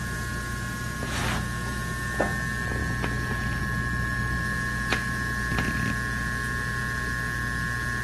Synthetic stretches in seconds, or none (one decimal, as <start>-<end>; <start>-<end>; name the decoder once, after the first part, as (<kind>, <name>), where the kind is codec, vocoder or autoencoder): none